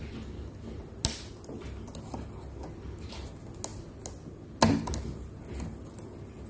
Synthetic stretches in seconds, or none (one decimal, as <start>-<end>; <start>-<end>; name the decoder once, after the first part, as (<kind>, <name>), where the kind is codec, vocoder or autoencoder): none